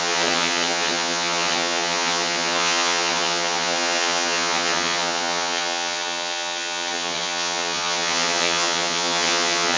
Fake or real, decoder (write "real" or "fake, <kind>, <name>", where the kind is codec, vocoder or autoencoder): fake, vocoder, HiFi-GAN